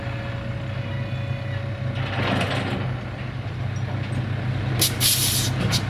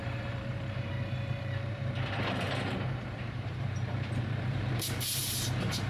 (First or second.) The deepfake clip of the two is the second